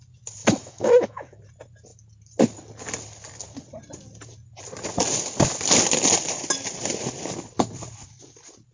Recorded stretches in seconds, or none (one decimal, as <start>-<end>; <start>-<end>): 0.0-0.4; 1.4-8.7